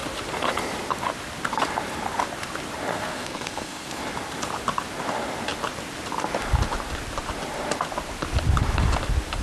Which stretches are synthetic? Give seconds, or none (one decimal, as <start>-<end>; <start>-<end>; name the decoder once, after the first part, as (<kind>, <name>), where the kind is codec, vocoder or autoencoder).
2.9-4.0 (codec, SNAC)